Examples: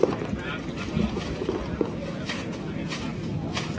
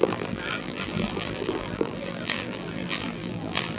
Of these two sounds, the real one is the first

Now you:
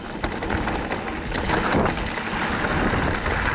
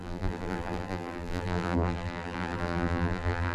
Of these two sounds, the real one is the first